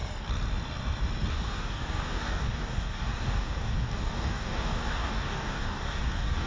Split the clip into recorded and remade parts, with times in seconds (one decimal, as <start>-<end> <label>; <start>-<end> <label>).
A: 0.0-1.3 recorded; 1.3-6.5 remade